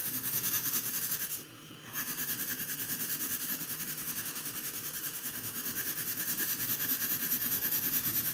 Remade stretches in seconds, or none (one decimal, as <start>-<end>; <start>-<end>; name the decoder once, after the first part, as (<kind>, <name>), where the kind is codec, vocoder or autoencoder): 0.0-8.3 (autoencoder, DAC-VAE)